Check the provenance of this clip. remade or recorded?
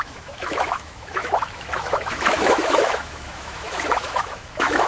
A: remade